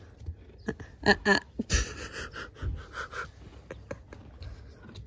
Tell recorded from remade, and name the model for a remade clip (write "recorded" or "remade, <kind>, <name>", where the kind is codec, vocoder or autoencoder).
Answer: recorded